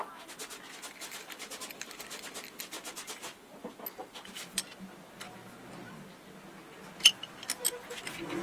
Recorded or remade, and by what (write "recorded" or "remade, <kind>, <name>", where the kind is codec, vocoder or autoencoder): recorded